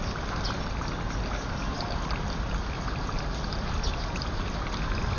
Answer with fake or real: real